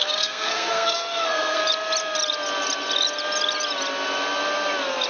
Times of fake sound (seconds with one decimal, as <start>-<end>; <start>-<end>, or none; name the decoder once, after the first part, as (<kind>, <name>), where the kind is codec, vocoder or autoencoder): 0.0-1.6 (codec, SNAC)